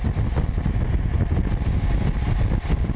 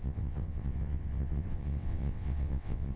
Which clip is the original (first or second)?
first